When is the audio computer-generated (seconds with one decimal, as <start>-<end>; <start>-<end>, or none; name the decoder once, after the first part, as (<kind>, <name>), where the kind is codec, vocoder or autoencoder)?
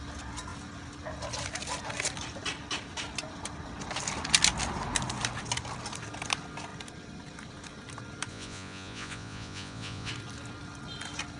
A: 8.3-10.1 (vocoder, Vocos)